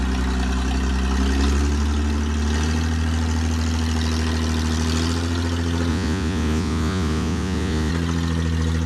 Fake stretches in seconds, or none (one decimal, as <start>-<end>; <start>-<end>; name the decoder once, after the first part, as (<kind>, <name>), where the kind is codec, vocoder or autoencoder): 5.9-7.9 (vocoder, Vocos)